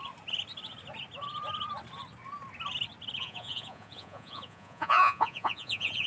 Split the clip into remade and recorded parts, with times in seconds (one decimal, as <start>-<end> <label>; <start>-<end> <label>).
0.0-3.2 recorded; 3.2-6.1 remade